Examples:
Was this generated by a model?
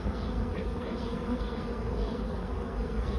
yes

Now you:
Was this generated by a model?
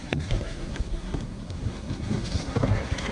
yes